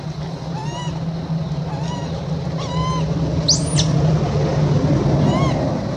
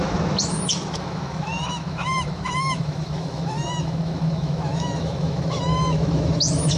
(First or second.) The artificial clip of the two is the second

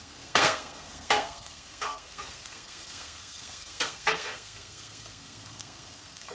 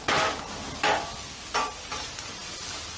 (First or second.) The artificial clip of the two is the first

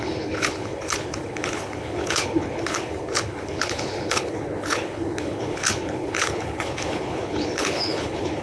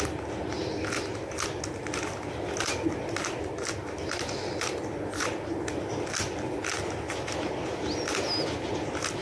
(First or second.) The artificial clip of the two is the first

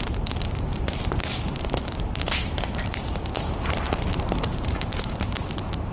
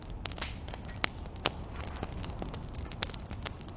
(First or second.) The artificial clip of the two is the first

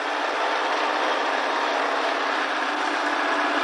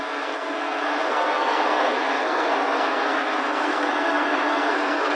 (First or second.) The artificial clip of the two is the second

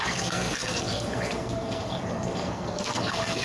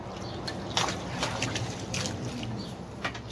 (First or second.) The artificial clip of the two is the first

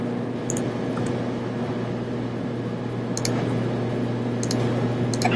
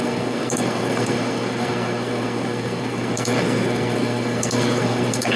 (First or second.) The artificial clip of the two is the second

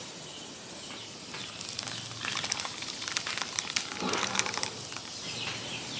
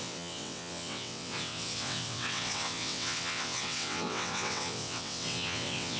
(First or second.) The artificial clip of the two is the second